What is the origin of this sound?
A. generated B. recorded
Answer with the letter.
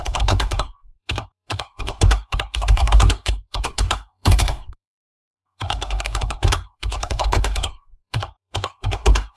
A